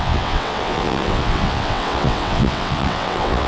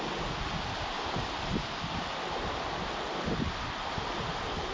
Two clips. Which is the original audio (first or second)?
second